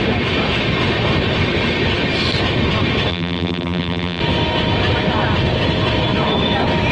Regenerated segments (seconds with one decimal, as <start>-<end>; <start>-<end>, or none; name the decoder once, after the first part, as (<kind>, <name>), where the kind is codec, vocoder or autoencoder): 3.1-4.2 (vocoder, BigVGAN v2)